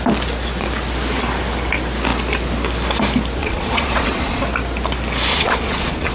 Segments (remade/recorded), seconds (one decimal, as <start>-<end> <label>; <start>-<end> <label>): 0.0-3.4 recorded; 3.4-4.4 remade; 4.4-5.3 recorded; 5.3-6.1 remade